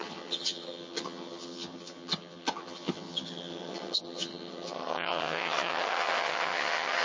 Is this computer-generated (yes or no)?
yes